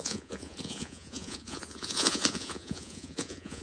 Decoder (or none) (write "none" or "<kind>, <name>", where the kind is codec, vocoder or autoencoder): vocoder, Vocos